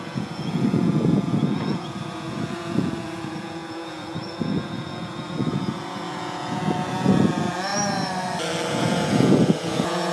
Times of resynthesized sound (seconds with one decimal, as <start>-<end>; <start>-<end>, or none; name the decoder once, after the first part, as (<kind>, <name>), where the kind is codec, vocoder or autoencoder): 0.0-7.7 (vocoder, Vocos); 8.7-10.1

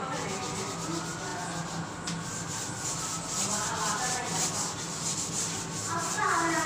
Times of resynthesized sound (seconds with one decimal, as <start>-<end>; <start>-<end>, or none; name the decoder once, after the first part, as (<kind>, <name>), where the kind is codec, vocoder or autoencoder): none